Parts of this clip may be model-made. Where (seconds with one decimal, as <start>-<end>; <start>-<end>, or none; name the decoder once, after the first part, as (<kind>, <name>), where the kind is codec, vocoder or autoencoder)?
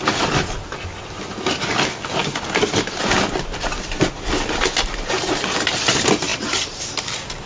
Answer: 6.3-6.8 (vocoder, BigVGAN v2)